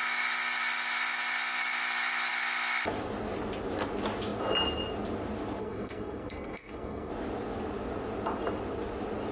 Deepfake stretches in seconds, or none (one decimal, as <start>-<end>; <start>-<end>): 5.6-7.1